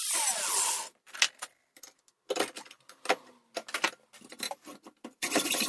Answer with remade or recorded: recorded